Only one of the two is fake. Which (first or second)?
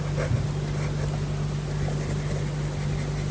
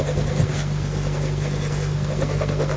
second